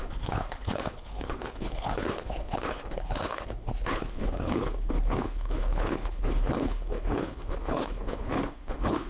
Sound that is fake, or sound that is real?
fake